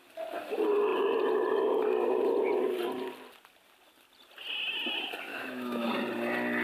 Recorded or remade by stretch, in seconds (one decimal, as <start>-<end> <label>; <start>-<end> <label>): 0.0-5.3 recorded; 5.3-5.9 remade; 5.9-6.6 recorded